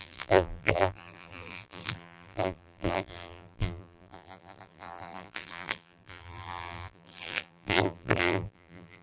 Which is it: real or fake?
fake